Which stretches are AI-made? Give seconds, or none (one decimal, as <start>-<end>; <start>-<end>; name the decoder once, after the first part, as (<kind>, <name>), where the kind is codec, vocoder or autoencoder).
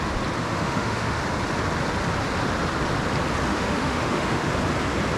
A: 0.4-1.2 (autoencoder, DAC-VAE); 3.5-4.5